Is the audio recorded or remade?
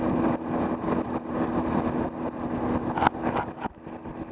recorded